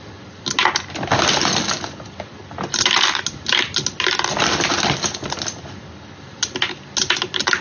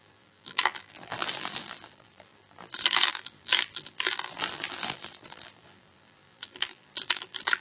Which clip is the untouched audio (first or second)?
first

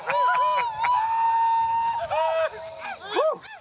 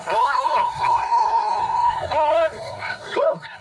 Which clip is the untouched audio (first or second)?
first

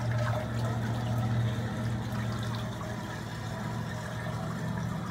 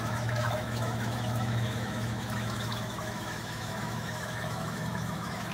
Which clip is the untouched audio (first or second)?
first